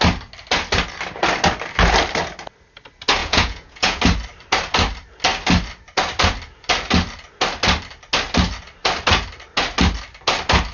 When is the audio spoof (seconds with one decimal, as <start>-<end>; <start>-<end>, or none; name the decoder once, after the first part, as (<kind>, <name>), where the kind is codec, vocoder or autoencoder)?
3.2-4.0 (vocoder, Vocos)